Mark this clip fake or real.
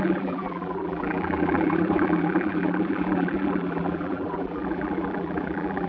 fake